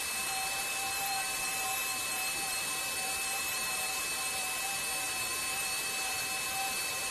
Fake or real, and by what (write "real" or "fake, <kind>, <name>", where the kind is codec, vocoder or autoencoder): real